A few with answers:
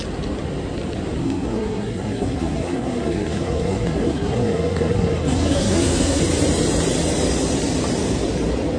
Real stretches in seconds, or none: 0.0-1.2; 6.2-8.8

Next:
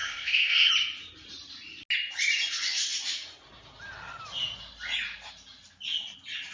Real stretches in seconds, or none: 0.7-6.5

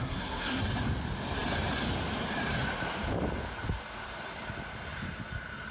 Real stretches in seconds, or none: 0.6-5.7

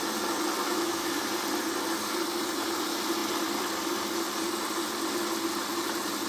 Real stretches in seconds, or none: 0.0-0.6; 1.2-6.3

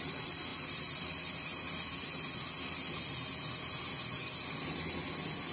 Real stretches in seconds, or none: 0.0-5.5

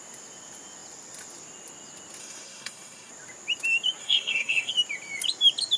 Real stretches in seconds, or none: 0.0-2.2; 3.1-4.0; 4.7-5.8

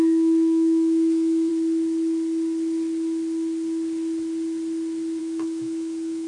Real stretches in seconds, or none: 1.5-5.2